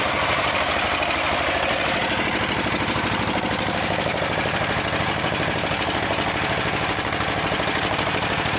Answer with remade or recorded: remade